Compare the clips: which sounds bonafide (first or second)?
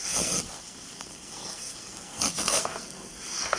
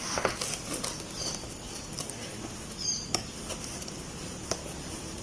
second